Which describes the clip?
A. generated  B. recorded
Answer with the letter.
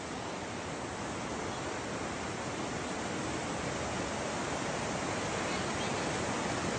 B